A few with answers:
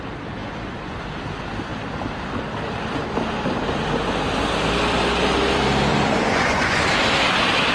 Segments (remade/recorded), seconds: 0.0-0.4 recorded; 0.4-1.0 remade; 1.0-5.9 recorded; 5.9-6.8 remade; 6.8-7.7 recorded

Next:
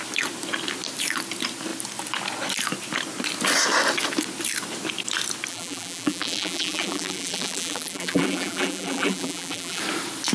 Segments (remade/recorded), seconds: 0.0-5.5 recorded; 5.5-9.8 remade; 9.8-10.3 recorded

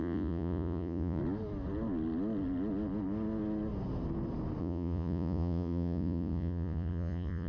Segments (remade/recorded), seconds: 0.0-1.2 remade; 1.2-4.6 recorded; 4.6-7.5 remade

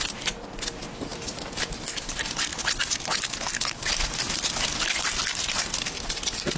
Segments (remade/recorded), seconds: 0.0-1.1 remade; 1.1-1.6 recorded; 1.6-2.5 remade; 2.5-3.7 recorded; 3.7-6.6 remade

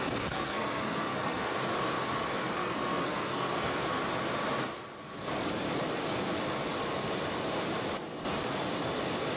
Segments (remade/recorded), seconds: 0.0-1.6 remade; 1.6-2.3 recorded; 2.3-4.0 remade; 4.0-9.4 recorded